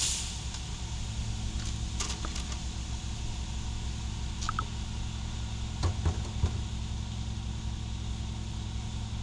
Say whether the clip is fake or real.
real